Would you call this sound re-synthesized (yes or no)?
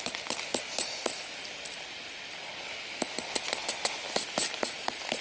no